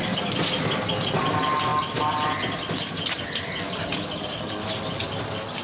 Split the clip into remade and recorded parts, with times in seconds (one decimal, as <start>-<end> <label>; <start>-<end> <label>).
0.0-5.6 recorded